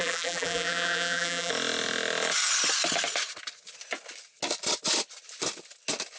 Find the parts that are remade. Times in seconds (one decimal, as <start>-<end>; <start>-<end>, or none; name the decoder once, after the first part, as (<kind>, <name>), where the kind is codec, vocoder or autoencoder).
0.0-1.5 (vocoder, BigVGAN v2)